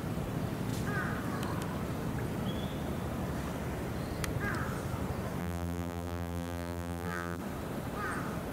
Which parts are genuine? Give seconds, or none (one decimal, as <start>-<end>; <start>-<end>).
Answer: 0.0-5.4; 7.4-8.5